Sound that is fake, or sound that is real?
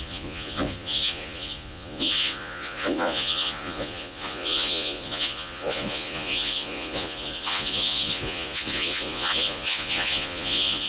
fake